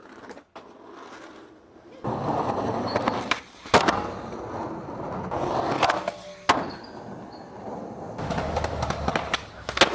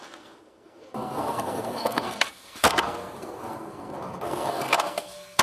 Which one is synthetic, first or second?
second